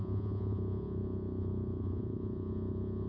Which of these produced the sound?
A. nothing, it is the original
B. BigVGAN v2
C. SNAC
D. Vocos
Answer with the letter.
D